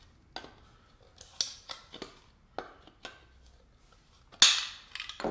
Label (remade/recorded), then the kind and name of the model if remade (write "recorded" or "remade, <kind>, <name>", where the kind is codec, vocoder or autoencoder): recorded